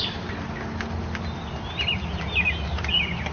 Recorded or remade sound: recorded